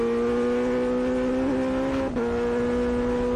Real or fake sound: real